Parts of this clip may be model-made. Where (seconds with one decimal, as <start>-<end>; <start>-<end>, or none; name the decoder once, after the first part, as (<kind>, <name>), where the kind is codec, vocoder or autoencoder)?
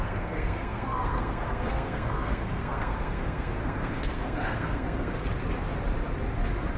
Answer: 0.0-5.3 (codec, SNAC)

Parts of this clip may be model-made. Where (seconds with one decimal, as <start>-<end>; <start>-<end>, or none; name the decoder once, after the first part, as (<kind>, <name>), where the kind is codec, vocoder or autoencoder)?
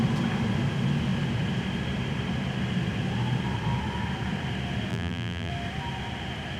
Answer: 4.9-5.5 (vocoder, BigVGAN v2)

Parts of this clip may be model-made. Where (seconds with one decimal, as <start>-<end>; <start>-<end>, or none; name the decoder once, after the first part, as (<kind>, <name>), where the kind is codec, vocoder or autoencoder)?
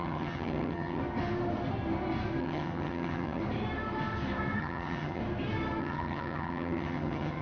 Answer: 0.0-1.0 (vocoder, HiFi-GAN); 2.4-3.4; 4.6-5.2; 5.8-7.4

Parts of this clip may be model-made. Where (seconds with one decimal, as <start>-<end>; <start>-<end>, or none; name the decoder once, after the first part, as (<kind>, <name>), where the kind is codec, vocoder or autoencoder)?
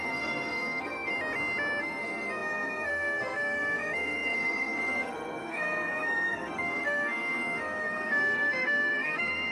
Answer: 0.0-1.1 (codec, SNAC); 1.8-9.5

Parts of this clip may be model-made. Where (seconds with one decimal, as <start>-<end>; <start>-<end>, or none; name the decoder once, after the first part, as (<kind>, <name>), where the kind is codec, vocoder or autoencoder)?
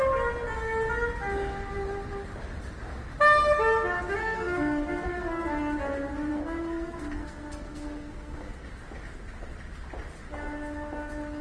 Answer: 4.2-5.4 (codec, SNAC); 6.3-8.8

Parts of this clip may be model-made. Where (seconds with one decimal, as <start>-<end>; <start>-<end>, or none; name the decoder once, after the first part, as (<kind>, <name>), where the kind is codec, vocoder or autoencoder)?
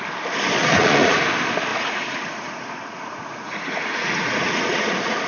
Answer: 0.6-1.2 (vocoder, Vocos); 1.7-5.3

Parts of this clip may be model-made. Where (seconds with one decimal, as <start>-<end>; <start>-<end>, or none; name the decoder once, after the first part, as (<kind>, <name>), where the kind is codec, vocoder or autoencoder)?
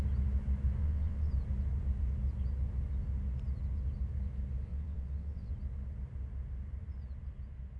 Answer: 0.8-1.3 (vocoder, WaveNeXt); 4.7-5.5